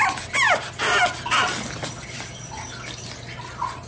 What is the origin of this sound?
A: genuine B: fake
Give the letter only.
A